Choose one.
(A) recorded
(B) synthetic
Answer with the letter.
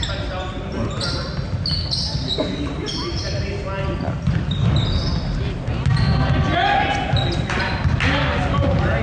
A